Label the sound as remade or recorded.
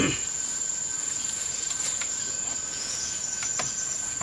remade